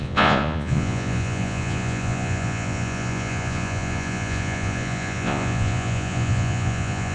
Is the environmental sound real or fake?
fake